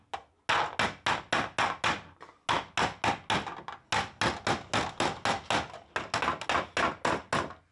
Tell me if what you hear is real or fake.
real